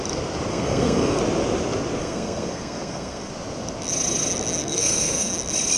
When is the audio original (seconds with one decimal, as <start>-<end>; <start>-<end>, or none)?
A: 0.0-0.5; 1.2-2.0; 3.3-4.6; 5.3-5.8